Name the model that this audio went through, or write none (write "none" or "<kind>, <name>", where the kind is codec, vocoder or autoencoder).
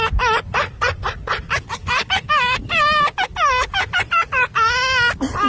none